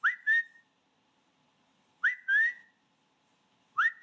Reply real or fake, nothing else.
real